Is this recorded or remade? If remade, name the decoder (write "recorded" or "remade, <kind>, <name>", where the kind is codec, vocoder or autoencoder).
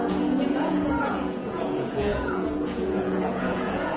remade, vocoder, Vocos